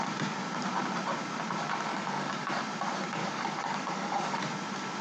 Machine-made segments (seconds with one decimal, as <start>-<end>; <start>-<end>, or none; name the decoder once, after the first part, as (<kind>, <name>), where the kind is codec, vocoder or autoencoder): 1.9-2.6 (codec, DAC); 3.2-4.4